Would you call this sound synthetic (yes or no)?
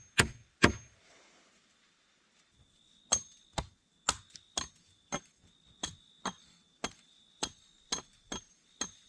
no